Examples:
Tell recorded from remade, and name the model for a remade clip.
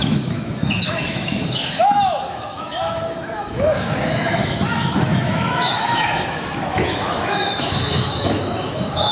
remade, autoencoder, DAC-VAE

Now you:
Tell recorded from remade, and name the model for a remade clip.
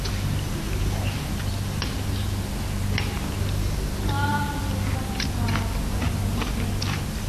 recorded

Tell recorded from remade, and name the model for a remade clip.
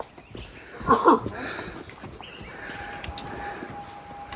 recorded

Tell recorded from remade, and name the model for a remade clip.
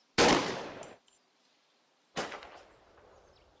recorded